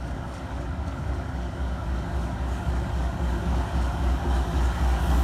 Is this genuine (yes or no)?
no